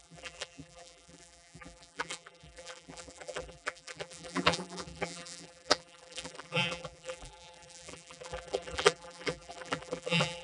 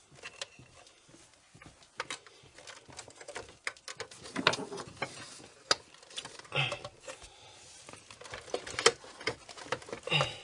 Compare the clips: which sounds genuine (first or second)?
second